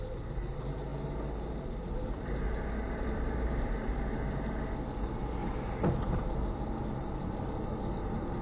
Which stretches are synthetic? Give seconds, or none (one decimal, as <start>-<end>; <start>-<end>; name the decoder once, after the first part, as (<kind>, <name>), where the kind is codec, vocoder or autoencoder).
none